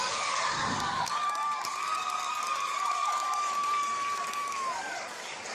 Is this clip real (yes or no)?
no